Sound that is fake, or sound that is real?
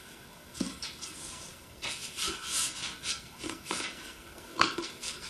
fake